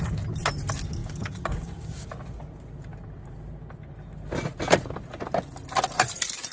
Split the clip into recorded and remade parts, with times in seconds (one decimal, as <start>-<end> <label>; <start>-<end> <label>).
0.0-1.0 recorded; 1.0-2.1 remade; 2.1-6.5 recorded